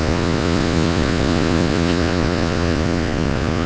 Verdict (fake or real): fake